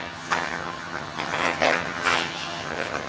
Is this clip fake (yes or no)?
yes